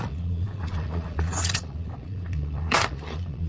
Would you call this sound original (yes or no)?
no